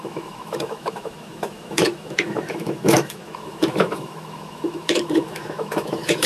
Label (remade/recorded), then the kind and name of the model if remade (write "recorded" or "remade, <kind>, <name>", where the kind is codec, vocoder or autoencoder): remade, autoencoder, DAC-VAE